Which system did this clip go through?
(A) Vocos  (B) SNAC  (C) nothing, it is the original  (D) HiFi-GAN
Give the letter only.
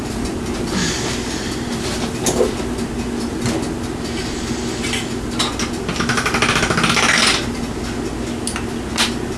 C